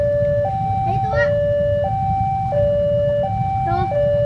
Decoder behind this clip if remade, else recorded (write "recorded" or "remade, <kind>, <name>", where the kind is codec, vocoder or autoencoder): recorded